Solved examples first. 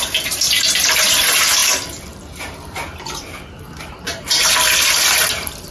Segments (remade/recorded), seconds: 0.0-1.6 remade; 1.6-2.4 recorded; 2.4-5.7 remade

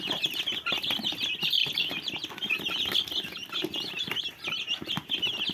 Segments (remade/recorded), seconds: 0.0-1.6 recorded; 1.6-4.3 remade; 4.3-5.5 recorded

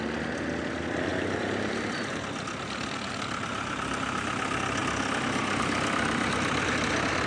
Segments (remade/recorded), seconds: 0.0-1.1 recorded; 1.1-2.2 remade; 2.2-7.3 recorded

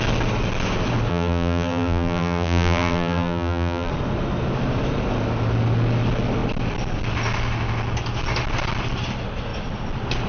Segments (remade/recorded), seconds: 0.0-1.1 recorded; 1.1-3.9 remade; 3.9-10.3 recorded

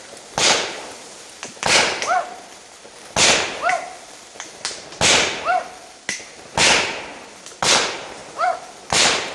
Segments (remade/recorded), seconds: 0.0-9.3 recorded